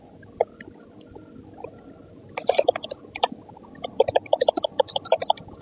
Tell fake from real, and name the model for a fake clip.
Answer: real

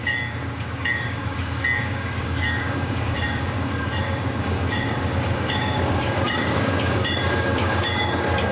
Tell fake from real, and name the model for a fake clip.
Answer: fake, codec, DAC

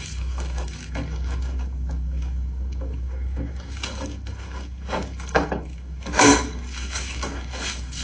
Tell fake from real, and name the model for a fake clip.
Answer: fake, codec, DAC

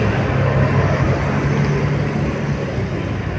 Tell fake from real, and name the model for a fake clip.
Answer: real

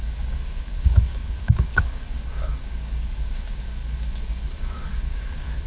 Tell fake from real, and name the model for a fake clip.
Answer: fake, codec, DAC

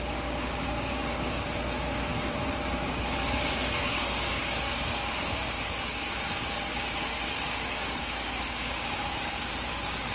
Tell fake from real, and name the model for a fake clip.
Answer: fake, codec, DAC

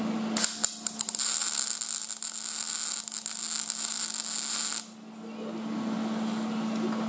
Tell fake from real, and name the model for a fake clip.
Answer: real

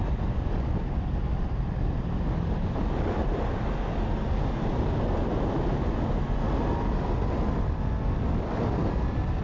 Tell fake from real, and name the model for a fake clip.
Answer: real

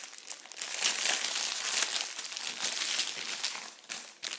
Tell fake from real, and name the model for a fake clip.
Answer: real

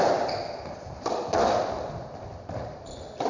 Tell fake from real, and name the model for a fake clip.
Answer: real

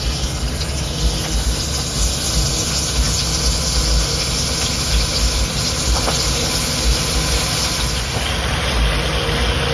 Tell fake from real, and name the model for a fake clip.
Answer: real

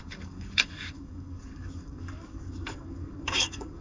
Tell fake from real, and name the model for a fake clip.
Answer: fake, codec, DAC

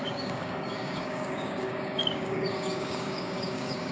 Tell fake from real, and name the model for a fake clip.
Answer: fake, codec, DAC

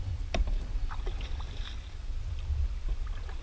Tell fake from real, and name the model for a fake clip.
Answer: real